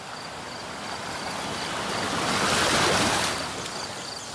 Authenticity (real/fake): real